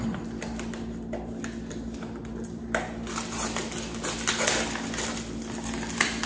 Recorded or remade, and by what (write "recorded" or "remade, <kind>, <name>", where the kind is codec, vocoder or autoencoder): recorded